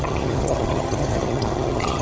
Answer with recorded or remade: remade